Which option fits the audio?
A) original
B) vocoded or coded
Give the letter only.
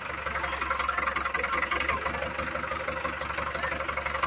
A